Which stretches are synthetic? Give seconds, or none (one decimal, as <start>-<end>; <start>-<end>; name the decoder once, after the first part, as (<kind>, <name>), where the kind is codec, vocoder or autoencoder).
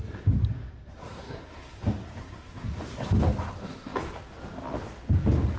1.0-1.8 (codec, SNAC); 2.2-2.8